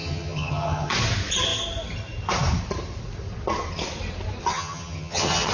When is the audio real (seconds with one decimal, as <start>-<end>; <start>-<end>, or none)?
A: 0.9-4.4

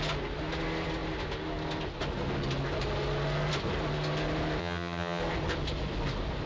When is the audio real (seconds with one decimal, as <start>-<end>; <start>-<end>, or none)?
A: 0.0-4.6; 5.2-6.5

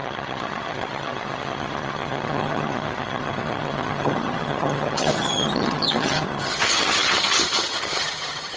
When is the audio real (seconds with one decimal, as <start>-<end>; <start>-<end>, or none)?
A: none

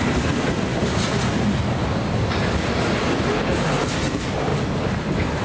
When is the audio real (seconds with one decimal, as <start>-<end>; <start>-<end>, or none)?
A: 0.0-5.4

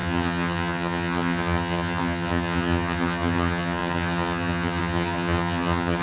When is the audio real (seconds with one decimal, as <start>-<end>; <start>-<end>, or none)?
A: none

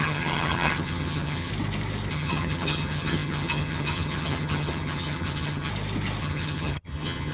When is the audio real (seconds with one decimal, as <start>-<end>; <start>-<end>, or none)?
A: 1.5-2.1; 5.7-6.2

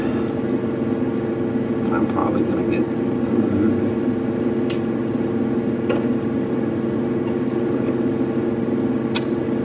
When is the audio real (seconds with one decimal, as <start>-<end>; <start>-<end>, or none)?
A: 0.0-9.6

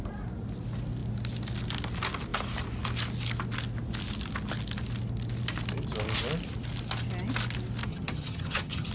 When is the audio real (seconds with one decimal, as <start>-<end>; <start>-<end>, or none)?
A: 0.0-7.9